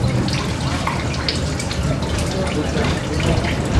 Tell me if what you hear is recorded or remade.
recorded